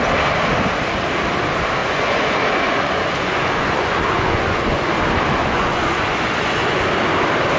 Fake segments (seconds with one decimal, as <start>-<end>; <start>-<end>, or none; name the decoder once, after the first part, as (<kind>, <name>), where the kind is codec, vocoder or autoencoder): 1.8-4.9 (vocoder, Vocos); 5.4-6.8